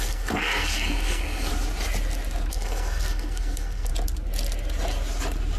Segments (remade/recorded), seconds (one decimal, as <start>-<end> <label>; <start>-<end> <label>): 0.0-1.5 remade; 1.5-2.5 recorded; 2.5-3.9 remade; 3.9-5.6 recorded